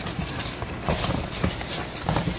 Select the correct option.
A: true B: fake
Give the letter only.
B